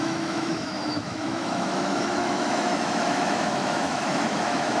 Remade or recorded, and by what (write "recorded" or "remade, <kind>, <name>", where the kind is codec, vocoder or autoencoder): remade, autoencoder, DAC-VAE